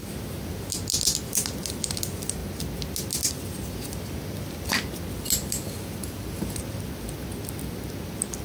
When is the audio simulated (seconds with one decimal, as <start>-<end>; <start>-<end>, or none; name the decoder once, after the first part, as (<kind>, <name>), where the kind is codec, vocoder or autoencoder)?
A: none